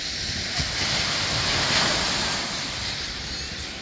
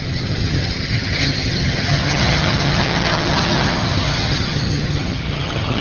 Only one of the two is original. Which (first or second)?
first